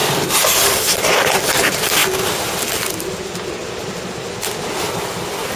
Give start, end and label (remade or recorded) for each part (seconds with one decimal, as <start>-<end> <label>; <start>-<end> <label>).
0.0-0.8 remade; 0.8-5.6 recorded